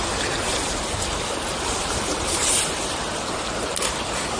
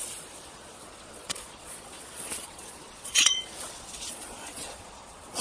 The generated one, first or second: second